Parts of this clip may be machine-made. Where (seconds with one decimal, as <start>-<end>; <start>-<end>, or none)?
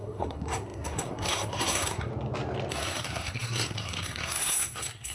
0.0-2.1; 2.7-5.1